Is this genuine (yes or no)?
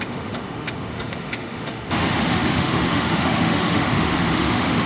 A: no